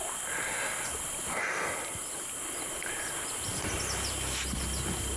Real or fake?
real